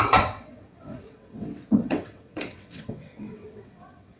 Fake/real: fake